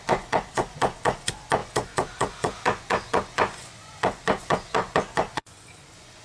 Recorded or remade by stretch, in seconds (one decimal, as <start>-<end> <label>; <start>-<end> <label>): 0.0-6.2 remade